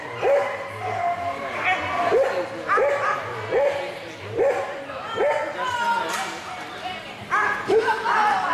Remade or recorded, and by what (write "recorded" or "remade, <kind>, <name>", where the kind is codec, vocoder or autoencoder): recorded